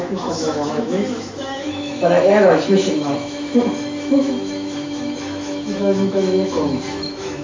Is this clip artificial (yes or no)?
yes